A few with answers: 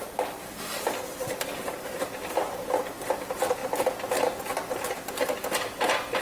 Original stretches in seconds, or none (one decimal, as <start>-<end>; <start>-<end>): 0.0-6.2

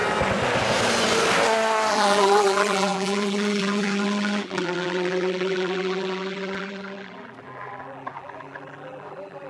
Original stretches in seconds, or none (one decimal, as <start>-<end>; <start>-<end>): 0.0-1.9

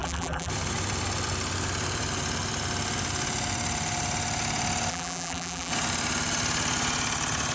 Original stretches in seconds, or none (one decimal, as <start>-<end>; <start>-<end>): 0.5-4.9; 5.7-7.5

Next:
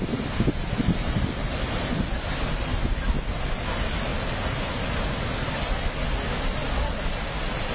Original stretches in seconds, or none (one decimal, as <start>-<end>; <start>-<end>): 0.0-7.7